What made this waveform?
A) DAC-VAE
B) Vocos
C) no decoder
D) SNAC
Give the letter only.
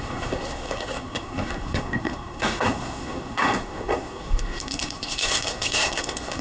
D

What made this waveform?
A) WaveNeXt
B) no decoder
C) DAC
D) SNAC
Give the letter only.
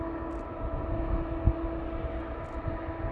B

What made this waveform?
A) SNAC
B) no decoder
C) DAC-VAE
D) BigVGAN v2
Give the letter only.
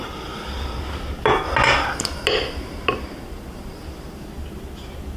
B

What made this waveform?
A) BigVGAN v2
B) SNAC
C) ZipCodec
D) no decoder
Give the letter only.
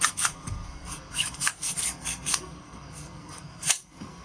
B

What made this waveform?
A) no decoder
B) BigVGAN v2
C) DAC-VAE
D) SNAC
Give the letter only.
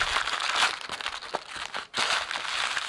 A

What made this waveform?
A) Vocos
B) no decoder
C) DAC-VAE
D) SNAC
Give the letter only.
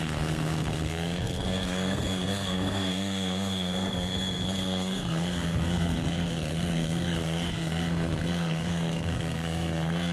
D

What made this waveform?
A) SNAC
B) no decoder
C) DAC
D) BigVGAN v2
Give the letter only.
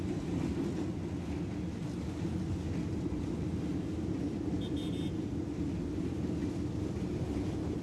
B